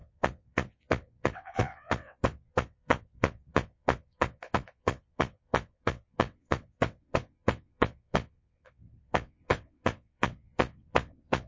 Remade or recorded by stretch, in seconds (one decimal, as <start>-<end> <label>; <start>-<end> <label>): 0.0-11.5 remade